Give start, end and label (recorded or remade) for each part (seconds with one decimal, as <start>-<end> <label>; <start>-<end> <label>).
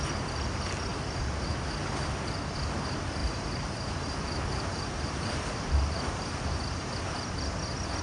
0.0-0.9 recorded; 0.9-1.6 remade; 1.6-3.2 recorded; 3.2-7.0 remade; 7.0-8.0 recorded